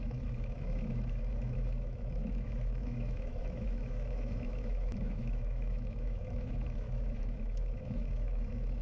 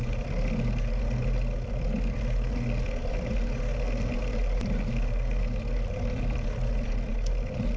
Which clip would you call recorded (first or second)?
second